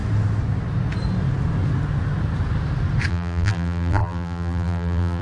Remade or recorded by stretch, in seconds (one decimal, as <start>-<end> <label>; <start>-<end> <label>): 0.0-3.1 recorded; 3.1-5.2 remade